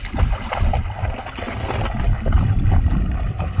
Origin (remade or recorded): recorded